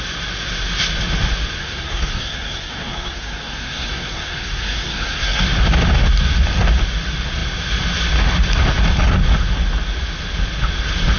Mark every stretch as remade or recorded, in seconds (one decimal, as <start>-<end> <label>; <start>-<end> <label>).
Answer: 0.0-1.6 recorded; 1.6-5.4 remade; 5.4-11.2 recorded

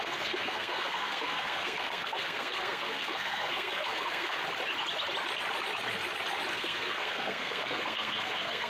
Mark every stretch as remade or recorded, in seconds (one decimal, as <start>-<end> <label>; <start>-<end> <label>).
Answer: 0.0-4.4 remade; 4.4-6.5 recorded; 6.5-8.7 remade